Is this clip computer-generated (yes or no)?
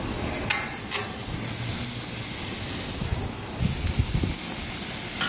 no